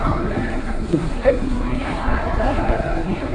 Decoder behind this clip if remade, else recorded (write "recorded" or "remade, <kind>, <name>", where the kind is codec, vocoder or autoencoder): remade, codec, SNAC